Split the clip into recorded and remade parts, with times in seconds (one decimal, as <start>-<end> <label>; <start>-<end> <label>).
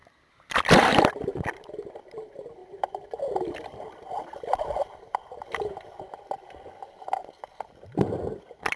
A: 0.0-1.4 remade; 1.4-2.6 recorded; 2.6-6.0 remade; 6.0-8.8 recorded